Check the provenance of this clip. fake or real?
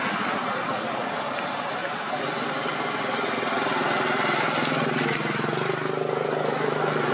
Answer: real